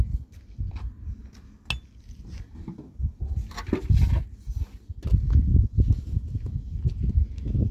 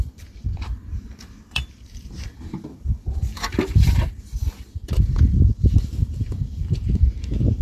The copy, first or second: second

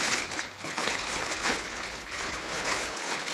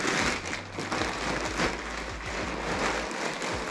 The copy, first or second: first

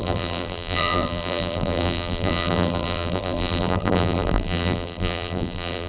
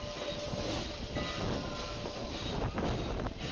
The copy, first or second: first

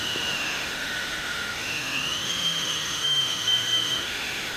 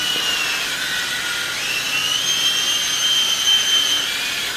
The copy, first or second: first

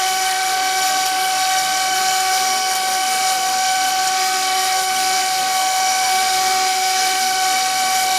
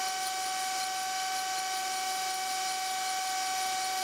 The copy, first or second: first